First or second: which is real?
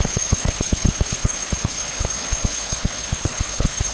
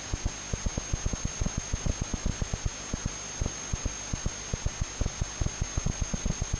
second